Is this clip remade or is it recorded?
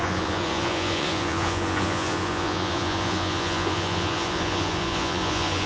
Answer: remade